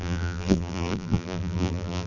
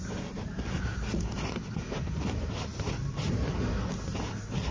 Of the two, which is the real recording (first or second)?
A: second